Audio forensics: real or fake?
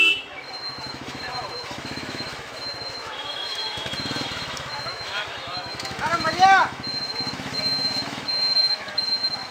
fake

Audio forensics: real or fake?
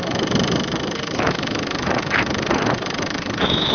fake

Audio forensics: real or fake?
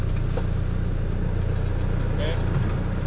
real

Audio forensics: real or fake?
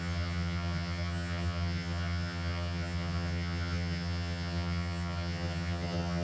fake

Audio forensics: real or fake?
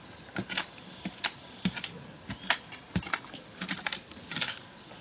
real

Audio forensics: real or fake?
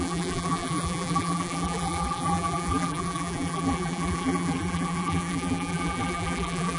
fake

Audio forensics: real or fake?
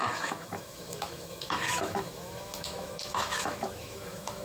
fake